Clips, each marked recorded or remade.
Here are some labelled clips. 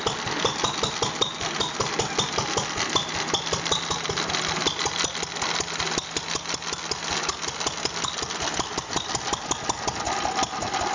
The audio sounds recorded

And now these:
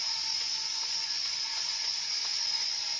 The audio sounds remade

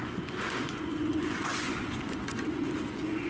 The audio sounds remade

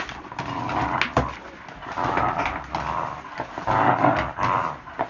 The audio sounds recorded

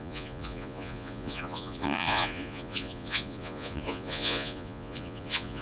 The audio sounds remade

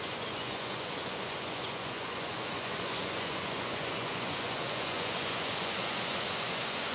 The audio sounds remade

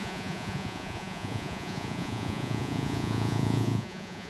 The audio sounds remade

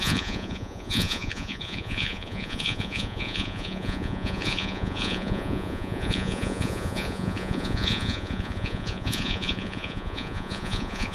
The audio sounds remade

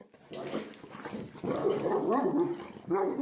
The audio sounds recorded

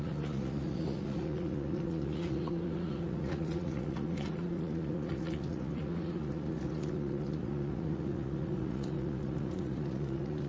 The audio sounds remade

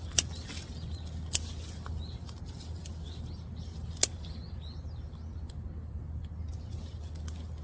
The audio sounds recorded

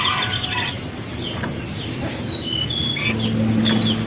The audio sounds recorded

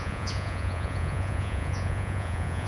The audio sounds remade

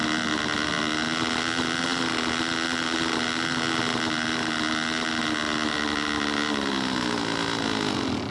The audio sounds recorded